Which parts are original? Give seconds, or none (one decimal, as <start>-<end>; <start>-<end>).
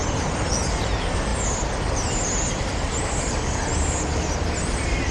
0.0-5.1